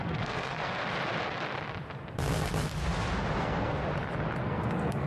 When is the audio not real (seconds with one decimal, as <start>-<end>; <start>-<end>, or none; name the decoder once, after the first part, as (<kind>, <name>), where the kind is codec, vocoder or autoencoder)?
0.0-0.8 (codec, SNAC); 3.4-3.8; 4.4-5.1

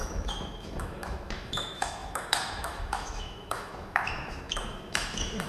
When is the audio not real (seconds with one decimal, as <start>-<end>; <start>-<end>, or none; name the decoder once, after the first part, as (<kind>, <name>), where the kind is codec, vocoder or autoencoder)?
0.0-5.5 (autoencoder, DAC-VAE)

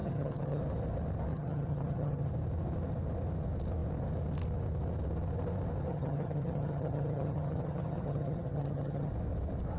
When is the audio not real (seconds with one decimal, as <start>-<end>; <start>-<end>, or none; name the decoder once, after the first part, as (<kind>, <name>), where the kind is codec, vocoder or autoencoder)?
0.0-0.6 (vocoder, HiFi-GAN); 1.3-2.3; 5.9-9.1

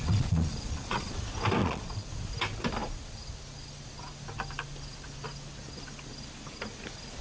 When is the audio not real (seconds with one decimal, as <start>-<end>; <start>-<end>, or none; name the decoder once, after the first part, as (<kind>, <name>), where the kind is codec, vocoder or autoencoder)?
0.0-1.2 (vocoder, Vocos); 1.6-2.1